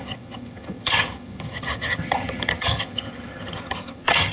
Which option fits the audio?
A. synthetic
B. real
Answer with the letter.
A